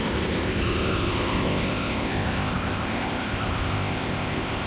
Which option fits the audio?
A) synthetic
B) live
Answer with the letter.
A